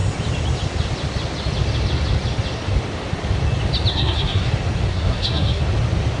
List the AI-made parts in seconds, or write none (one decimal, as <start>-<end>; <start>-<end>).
3.9-4.5; 4.9-5.6